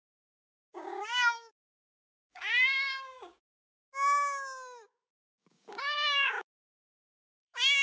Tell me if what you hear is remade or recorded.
remade